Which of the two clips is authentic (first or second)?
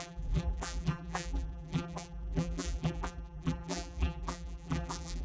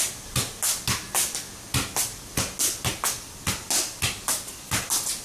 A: second